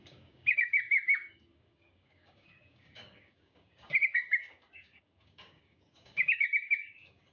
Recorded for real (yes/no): no